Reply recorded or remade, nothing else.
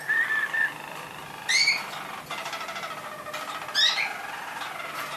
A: recorded